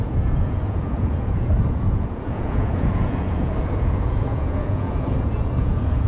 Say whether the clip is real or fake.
fake